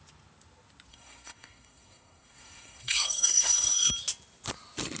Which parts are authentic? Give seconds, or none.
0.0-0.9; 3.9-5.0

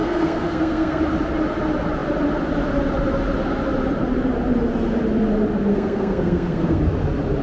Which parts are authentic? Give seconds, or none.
1.0-5.7; 6.8-7.4

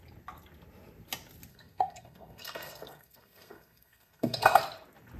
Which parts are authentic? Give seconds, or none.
0.0-1.5; 4.6-5.2

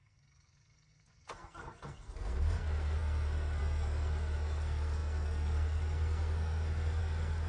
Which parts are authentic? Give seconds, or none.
none

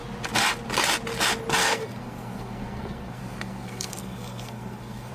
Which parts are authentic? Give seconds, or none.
0.0-1.6